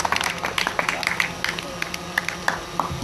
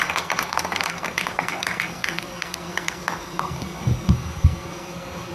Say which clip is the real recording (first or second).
first